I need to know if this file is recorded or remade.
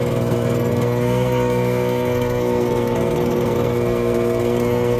remade